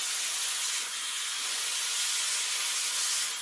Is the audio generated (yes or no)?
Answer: yes